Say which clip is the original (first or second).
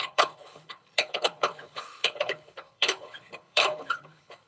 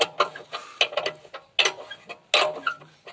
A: second